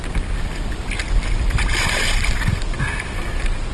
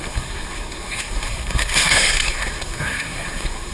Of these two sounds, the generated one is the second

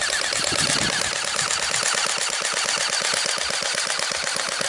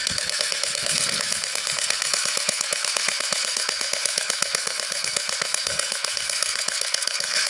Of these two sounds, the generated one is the second